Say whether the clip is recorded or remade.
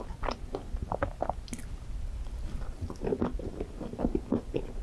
recorded